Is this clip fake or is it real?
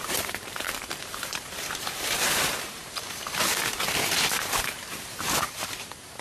fake